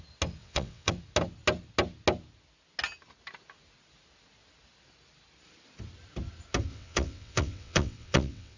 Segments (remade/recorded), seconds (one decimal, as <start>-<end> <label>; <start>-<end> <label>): 0.0-0.4 recorded; 0.4-0.9 remade; 0.9-6.7 recorded; 6.7-8.6 remade